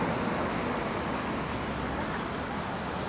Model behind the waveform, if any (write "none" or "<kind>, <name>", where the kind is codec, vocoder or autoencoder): none